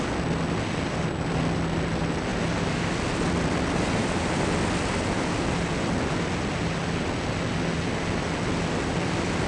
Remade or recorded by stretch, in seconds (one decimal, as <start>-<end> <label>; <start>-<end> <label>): 0.0-9.5 recorded